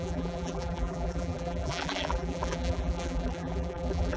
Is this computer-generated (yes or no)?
yes